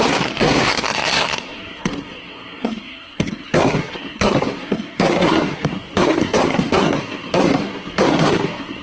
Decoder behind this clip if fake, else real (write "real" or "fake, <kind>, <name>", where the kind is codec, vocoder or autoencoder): fake, codec, SNAC